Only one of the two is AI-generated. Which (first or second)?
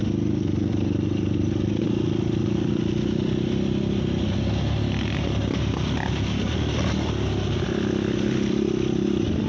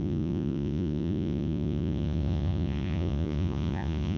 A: second